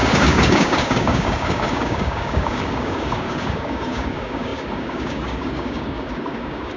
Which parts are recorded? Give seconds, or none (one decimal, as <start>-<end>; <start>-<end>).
none